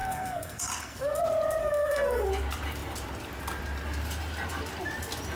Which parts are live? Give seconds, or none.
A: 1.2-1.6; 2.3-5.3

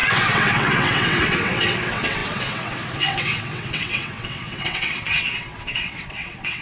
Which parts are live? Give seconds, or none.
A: none

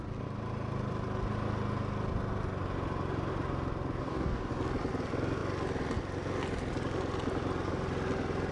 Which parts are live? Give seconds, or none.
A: 0.0-4.0; 4.5-8.5